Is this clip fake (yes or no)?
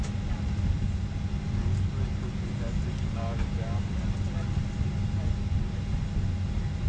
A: no